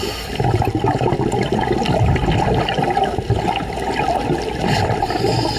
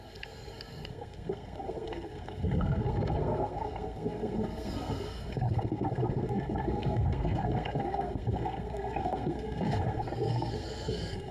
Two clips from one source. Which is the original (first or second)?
first